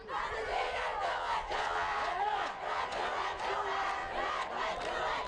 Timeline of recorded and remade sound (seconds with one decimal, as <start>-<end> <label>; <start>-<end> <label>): 0.0-0.5 recorded; 0.5-3.4 remade; 3.4-4.0 recorded; 4.0-4.5 remade; 4.5-5.3 recorded